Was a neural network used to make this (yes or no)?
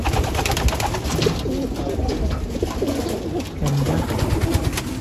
no